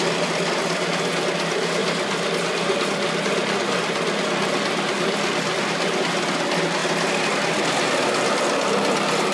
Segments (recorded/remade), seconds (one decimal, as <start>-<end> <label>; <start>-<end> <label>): 0.0-9.3 recorded